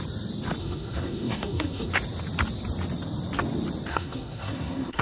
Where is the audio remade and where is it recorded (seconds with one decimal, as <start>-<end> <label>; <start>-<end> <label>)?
0.0-0.6 recorded; 0.6-1.9 remade; 1.9-3.9 recorded; 3.9-5.0 remade